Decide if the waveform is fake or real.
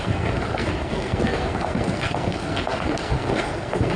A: fake